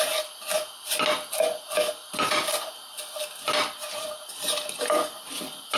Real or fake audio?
real